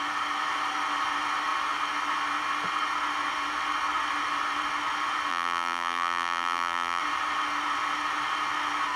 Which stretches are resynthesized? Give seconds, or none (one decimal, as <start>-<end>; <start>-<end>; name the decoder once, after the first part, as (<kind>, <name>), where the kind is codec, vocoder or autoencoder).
5.3-7.0 (vocoder, BigVGAN v2)